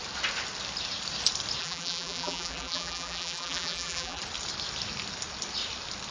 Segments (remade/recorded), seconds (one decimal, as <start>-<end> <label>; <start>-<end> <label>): 0.0-1.6 recorded; 1.6-4.2 remade; 4.2-6.1 recorded